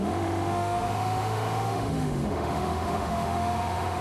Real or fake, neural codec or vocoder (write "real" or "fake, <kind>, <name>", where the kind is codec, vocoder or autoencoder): fake, autoencoder, DAC-VAE